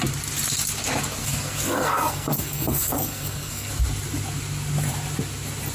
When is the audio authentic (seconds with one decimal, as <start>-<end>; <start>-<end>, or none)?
0.0-1.2; 3.7-5.7